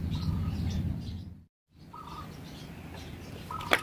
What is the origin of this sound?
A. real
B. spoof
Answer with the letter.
A